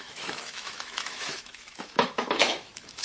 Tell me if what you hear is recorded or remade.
remade